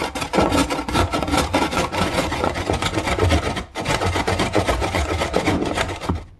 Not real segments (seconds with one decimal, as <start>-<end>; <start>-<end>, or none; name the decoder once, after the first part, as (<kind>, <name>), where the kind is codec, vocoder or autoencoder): 0.0-6.4 (vocoder, Vocos)